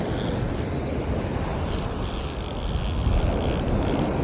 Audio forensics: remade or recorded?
recorded